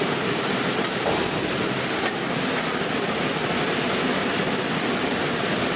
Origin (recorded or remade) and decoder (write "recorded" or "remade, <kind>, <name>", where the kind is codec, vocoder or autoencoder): recorded